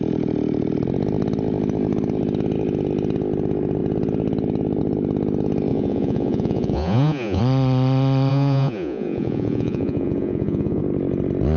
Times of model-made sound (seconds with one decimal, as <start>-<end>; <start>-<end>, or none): 5.7-7.4; 8.3-10.8